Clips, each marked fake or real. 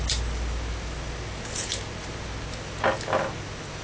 real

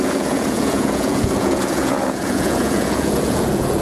fake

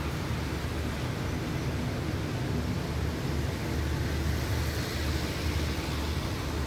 real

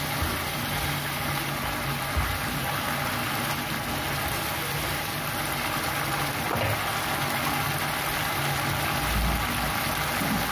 real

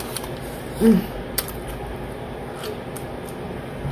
real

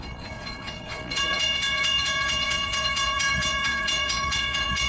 fake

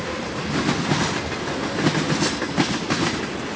real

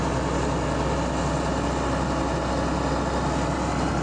real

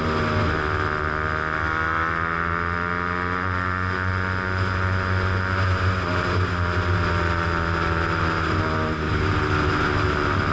real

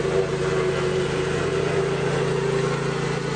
real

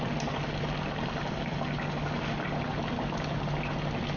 real